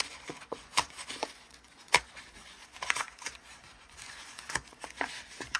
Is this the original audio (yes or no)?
no